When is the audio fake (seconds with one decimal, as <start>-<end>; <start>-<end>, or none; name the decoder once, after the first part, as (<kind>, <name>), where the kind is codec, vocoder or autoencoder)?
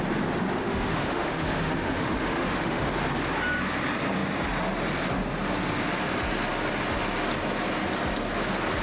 0.6-2.9 (autoencoder, DAC-VAE)